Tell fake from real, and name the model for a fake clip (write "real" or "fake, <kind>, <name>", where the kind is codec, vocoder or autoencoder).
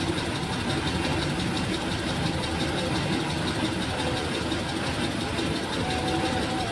real